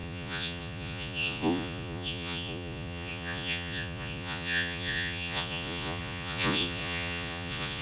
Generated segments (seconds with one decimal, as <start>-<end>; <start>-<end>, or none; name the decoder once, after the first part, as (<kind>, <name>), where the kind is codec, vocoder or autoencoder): 0.0-7.8 (vocoder, Vocos)